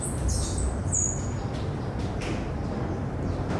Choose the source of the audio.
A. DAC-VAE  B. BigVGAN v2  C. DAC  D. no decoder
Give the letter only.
D